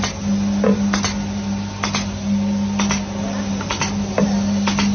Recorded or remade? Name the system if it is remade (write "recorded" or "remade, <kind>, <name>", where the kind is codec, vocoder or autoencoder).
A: recorded